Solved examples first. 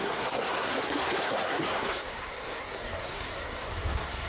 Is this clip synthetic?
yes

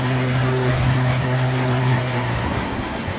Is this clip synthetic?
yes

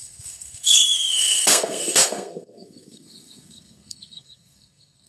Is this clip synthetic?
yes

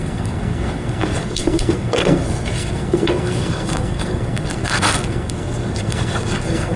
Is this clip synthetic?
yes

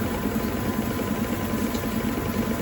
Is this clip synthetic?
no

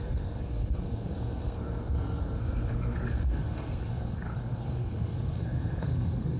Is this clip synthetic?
yes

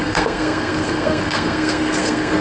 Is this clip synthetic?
yes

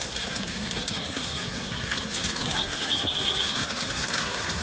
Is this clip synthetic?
yes